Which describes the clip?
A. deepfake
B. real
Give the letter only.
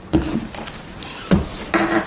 B